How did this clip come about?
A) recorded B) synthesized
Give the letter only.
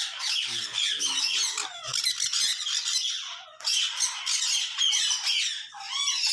A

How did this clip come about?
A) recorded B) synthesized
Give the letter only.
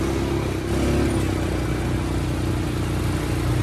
A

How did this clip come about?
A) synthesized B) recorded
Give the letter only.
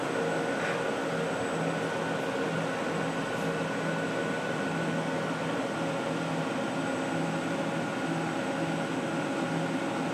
B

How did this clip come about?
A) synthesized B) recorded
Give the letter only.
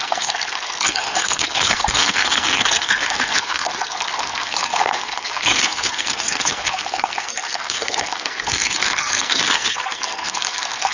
A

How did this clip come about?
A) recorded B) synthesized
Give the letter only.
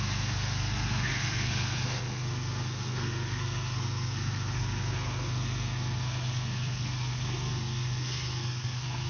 B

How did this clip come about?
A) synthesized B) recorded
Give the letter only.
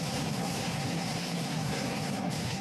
A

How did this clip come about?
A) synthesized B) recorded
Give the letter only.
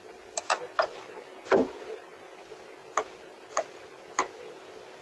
B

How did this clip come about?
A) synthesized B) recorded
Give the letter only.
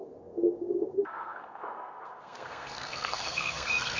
A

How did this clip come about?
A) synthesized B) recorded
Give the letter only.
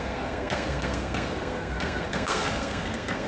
A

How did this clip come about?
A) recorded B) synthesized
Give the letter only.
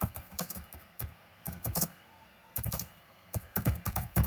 B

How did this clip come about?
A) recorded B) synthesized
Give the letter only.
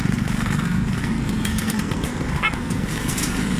B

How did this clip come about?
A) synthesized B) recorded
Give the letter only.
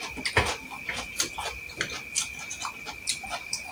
B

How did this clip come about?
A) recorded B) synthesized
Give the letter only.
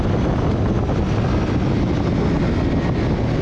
A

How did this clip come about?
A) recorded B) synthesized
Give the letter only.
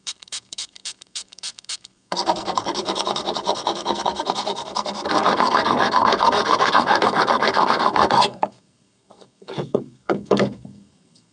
B